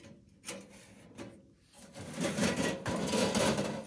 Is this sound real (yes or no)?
yes